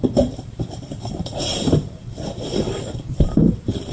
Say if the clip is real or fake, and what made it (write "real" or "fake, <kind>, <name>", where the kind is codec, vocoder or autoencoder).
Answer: fake, vocoder, BigVGAN v2